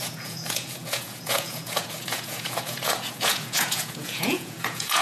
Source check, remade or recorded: remade